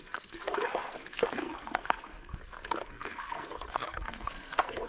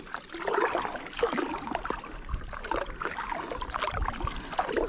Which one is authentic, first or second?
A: second